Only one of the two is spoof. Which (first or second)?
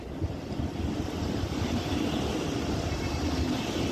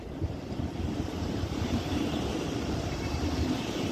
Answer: second